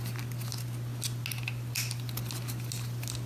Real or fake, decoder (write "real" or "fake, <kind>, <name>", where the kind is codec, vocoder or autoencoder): real